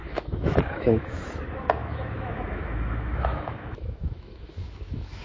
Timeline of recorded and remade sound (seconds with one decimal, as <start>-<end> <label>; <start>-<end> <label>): 0.0-1.2 remade; 1.2-1.8 recorded; 1.8-5.2 remade